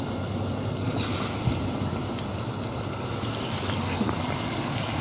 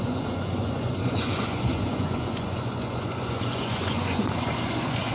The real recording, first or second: first